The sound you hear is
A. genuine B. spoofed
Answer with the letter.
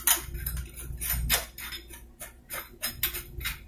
A